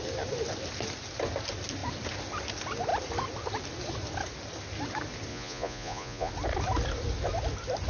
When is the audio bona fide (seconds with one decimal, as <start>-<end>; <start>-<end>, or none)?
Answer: 0.0-5.3; 6.3-7.9